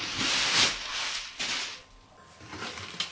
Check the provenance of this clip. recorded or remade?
recorded